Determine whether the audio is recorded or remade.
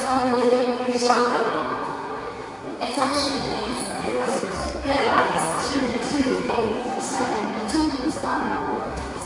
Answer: remade